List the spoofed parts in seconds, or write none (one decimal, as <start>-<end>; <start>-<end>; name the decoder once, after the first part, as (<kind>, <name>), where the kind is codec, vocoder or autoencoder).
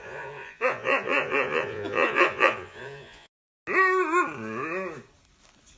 0.0-3.5 (vocoder, Vocos)